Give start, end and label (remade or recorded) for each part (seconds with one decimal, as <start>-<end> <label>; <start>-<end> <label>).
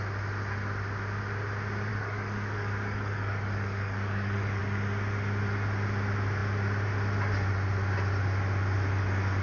0.0-1.9 recorded; 1.9-4.6 remade; 4.6-9.4 recorded